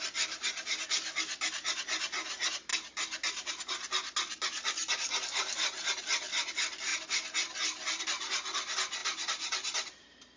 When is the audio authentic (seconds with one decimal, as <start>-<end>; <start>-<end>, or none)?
0.0-9.0